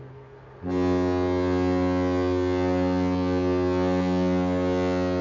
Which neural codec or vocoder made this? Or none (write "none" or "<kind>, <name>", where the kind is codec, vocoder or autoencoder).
none